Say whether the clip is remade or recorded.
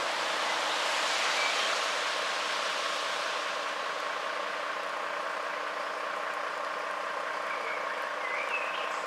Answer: recorded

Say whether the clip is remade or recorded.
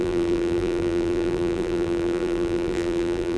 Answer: remade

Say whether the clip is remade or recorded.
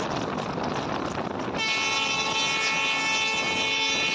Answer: recorded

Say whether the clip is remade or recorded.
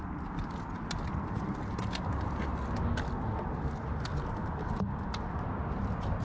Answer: recorded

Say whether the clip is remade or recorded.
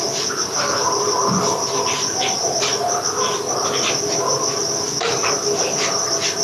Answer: recorded